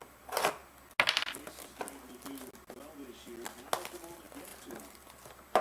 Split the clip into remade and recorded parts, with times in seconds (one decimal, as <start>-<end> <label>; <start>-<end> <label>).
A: 0.0-5.6 recorded

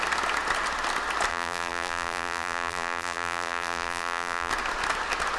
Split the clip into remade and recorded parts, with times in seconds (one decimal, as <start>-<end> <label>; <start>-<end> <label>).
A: 0.0-1.3 recorded; 1.3-4.5 remade; 4.5-5.4 recorded

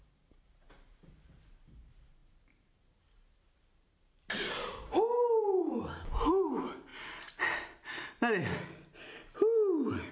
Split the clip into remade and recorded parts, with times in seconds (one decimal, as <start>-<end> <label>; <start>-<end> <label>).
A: 0.0-6.9 remade; 6.9-10.1 recorded

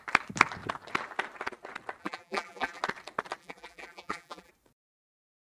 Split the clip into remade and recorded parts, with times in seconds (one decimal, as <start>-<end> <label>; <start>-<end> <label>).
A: 0.0-2.0 recorded; 2.0-2.8 remade; 2.8-3.4 recorded; 3.4-4.5 remade; 4.5-5.5 recorded

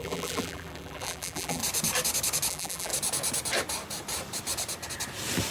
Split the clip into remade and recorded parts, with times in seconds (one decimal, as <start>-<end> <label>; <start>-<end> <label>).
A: 0.0-1.6 remade; 1.6-2.5 recorded; 2.5-2.9 remade; 2.9-5.5 recorded

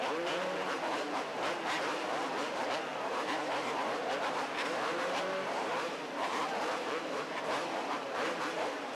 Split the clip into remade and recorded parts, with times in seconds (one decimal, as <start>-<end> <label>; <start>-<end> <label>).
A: 0.0-8.9 remade

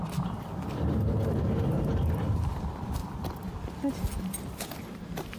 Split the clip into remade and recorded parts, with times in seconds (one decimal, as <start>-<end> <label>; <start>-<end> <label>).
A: 0.0-0.5 remade; 0.5-1.1 recorded; 1.1-3.0 remade; 3.0-4.2 recorded; 4.2-5.4 remade

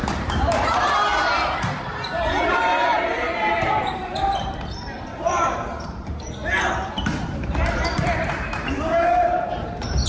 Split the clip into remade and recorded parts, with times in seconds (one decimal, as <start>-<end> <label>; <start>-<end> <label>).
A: 0.0-10.1 remade